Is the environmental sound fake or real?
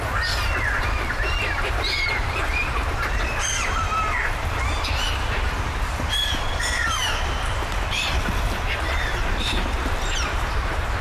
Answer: fake